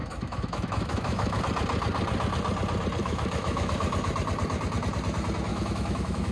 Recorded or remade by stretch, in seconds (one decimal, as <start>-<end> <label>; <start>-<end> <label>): 0.0-1.4 remade; 1.4-3.0 recorded; 3.0-3.7 remade; 3.7-5.5 recorded; 5.5-6.3 remade